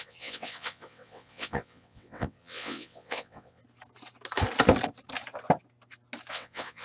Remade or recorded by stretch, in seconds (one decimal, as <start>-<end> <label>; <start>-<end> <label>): 0.0-3.6 remade; 3.6-6.3 recorded; 6.3-6.8 remade